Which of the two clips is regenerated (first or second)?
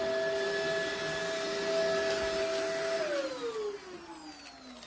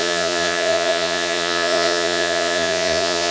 second